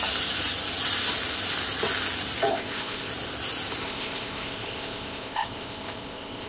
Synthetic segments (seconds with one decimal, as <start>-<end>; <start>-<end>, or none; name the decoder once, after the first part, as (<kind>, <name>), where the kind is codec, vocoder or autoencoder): 2.5-3.1 (codec, ZipCodec); 3.8-6.5